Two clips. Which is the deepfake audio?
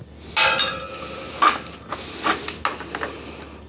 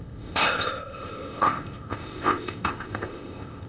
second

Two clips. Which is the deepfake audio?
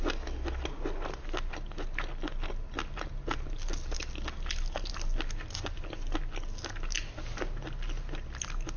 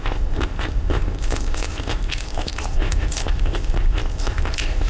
second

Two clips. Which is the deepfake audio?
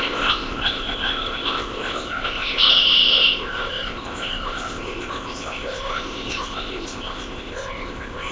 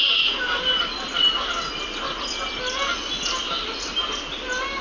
first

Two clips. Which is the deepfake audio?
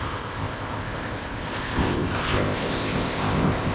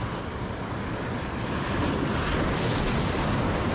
first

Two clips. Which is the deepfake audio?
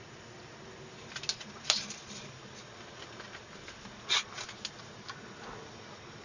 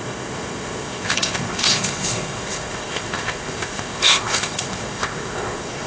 second